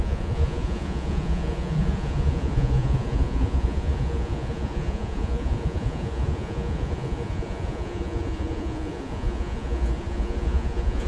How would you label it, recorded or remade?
remade